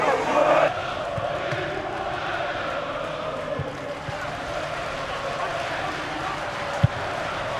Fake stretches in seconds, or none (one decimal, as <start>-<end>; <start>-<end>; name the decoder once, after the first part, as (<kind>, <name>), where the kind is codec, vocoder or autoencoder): 0.8-5.1 (vocoder, BigVGAN v2)